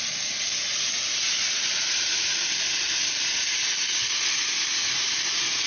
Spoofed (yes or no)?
no